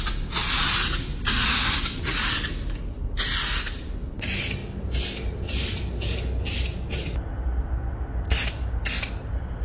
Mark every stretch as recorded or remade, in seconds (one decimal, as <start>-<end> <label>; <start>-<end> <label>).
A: 0.0-9.6 recorded